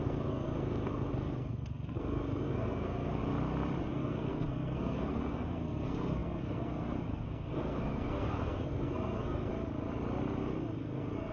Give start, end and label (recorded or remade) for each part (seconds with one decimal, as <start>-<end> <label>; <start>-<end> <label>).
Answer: 0.0-3.2 remade; 3.2-3.8 recorded; 3.8-9.5 remade; 9.5-10.8 recorded; 10.8-11.3 remade